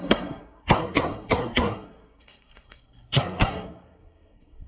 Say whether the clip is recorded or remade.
remade